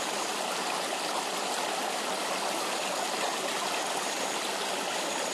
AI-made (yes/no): no